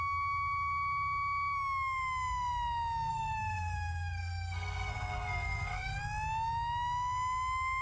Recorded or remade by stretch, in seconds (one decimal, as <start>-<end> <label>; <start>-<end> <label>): 0.0-3.1 recorded; 3.1-6.0 remade; 6.0-7.8 recorded